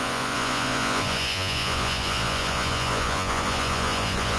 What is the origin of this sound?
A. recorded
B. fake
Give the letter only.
B